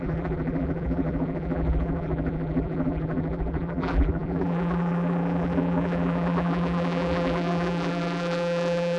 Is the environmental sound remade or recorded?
remade